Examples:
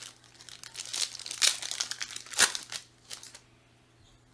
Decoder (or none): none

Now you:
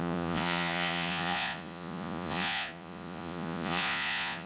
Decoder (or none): vocoder, Vocos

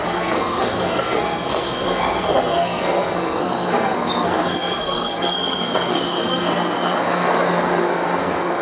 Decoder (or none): codec, SNAC